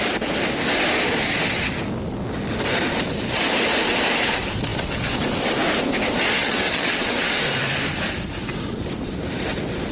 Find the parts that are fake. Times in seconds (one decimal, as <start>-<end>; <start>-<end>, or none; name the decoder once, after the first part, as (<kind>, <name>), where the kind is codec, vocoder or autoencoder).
6.4-7.3 (vocoder, WaveNeXt)